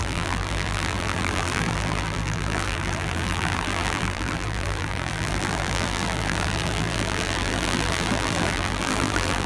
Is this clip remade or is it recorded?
remade